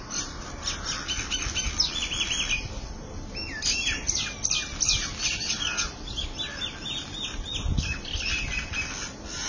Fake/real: real